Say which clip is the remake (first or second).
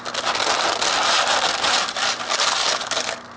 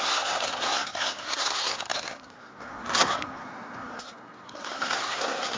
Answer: second